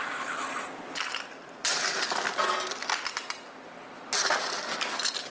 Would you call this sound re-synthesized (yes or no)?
no